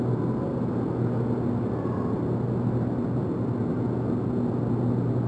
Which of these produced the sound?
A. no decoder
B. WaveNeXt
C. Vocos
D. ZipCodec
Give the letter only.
A